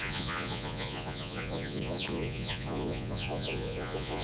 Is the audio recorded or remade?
remade